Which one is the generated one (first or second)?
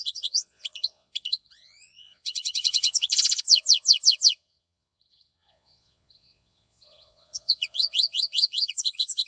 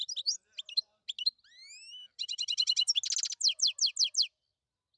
first